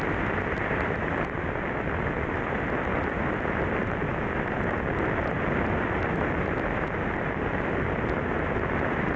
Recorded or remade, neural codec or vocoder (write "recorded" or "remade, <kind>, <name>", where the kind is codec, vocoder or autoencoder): recorded